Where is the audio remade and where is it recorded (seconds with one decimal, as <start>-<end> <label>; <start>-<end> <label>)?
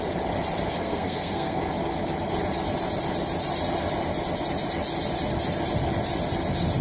0.0-0.8 recorded; 0.8-1.6 remade; 1.6-6.8 recorded